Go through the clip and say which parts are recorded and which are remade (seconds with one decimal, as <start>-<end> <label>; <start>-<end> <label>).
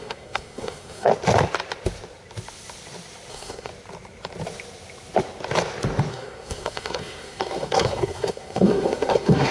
0.0-1.1 remade; 1.1-3.3 recorded; 3.3-3.7 remade; 3.7-6.1 recorded; 6.1-9.5 remade